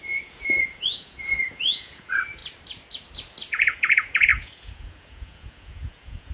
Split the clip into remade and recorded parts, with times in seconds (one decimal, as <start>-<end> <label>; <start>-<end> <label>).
0.0-2.4 remade; 2.4-3.5 recorded; 3.5-6.3 remade